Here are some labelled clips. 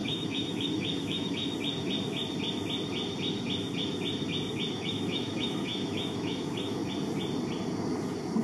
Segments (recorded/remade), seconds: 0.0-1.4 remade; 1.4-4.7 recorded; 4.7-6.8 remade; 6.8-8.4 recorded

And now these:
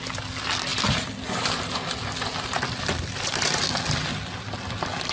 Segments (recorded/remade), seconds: 0.0-5.1 recorded